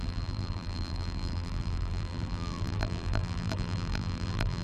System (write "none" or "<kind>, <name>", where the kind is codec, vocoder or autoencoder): vocoder, BigVGAN v2